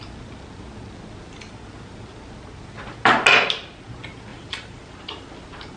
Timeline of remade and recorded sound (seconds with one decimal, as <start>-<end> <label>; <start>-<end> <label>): 0.0-4.3 recorded; 4.3-5.3 remade; 5.3-5.8 recorded